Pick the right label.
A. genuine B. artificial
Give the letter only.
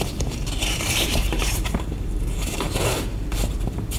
B